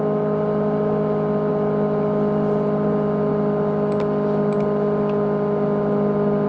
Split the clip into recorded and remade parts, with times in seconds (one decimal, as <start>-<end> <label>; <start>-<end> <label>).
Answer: 0.0-6.5 recorded